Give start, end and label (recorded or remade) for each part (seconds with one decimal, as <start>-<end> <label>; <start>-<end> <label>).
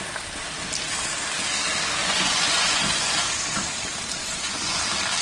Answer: 0.0-2.0 recorded; 2.0-3.3 remade; 3.3-4.2 recorded; 4.2-4.8 remade; 4.8-5.2 recorded